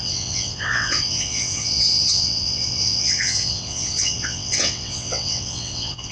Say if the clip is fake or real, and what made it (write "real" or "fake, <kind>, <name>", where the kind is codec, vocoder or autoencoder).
fake, vocoder, WaveNeXt